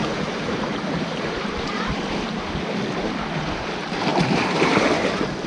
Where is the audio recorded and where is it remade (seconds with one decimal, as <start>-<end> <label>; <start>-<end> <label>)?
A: 0.0-2.5 remade; 2.5-4.1 recorded; 4.1-4.9 remade; 4.9-5.5 recorded